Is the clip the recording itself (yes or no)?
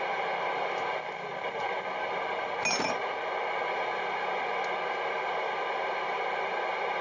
yes